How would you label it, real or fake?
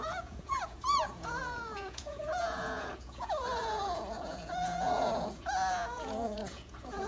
fake